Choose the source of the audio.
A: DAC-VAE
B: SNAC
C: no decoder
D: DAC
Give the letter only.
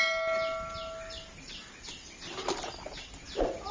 C